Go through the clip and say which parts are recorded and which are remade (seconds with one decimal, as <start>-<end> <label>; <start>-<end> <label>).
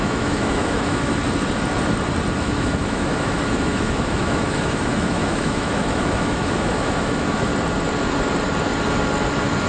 0.0-1.2 remade; 1.2-2.4 recorded; 2.4-7.5 remade; 7.5-9.7 recorded